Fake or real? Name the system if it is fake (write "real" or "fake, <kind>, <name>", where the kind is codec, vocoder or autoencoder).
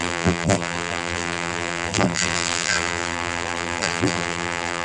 fake, vocoder, BigVGAN v2